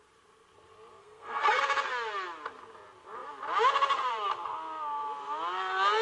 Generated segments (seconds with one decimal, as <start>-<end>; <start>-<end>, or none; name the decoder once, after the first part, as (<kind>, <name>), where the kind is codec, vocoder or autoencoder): 1.0-1.6 (codec, SNAC)